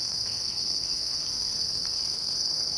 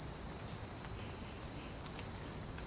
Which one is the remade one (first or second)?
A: first